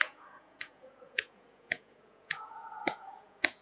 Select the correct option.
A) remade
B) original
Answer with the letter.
A